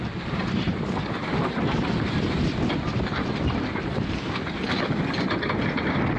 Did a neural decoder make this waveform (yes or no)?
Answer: no